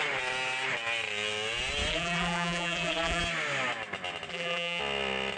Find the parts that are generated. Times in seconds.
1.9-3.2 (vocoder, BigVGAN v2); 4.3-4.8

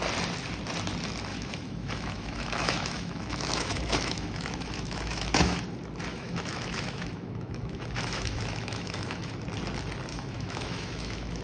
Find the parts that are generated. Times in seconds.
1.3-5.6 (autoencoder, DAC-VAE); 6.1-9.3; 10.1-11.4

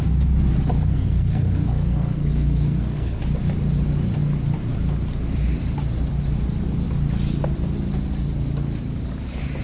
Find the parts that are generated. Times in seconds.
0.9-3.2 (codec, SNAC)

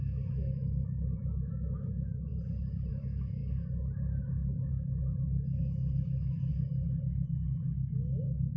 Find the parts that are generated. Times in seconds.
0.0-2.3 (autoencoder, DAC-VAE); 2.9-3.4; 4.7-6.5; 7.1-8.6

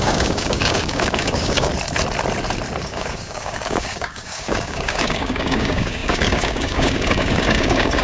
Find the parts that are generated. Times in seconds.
0.0-1.7 (codec, DAC); 2.8-8.0

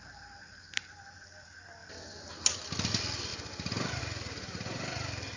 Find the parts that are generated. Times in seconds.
none

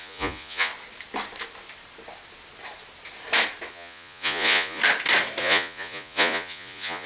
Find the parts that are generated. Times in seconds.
0.0-0.7 (vocoder, Vocos); 3.7-4.8; 5.4-7.1